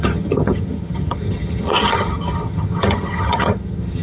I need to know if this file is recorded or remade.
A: remade